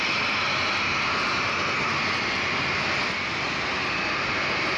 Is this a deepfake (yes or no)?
no